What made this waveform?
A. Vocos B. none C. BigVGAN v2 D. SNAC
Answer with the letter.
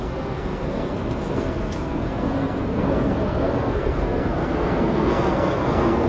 D